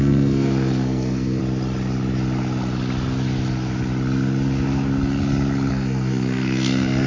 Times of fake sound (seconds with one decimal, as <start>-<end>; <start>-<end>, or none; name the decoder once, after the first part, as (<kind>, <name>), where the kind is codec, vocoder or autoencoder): 0.0-1.4 (codec, SNAC); 5.7-7.1